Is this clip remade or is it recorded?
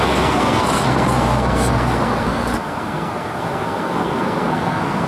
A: remade